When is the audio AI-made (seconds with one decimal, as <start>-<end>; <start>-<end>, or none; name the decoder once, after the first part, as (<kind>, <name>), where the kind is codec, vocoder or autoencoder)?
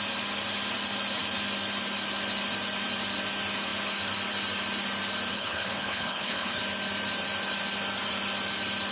5.3-6.6 (codec, HILCodec)